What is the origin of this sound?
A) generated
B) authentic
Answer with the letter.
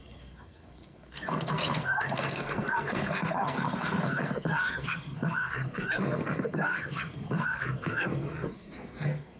A